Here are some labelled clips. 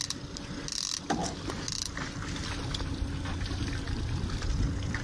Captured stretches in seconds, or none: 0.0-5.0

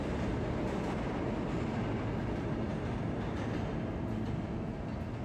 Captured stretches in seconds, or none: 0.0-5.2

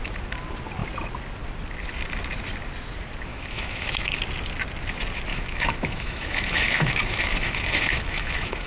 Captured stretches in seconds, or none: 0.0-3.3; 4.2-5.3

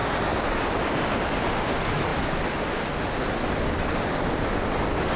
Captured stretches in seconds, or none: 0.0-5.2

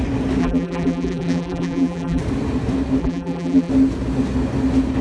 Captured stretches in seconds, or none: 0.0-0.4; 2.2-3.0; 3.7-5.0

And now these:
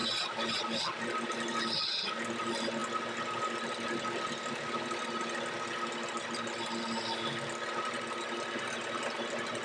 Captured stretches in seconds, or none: 0.0-9.6